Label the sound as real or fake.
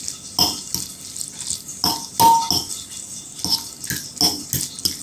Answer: real